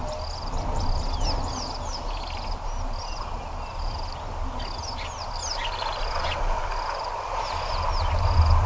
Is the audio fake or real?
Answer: real